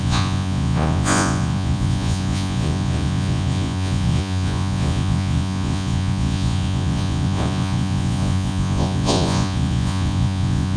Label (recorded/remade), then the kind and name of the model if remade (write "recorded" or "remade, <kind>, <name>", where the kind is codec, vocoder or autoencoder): remade, vocoder, Vocos